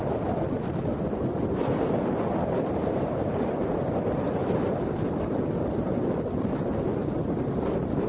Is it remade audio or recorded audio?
recorded